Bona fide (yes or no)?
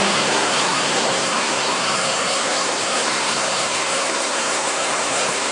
no